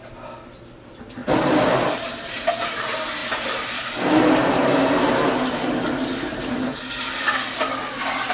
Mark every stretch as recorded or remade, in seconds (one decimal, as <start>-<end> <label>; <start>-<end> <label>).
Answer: 0.0-1.2 recorded; 1.2-2.8 remade; 2.8-8.3 recorded